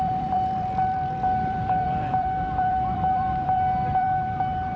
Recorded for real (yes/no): no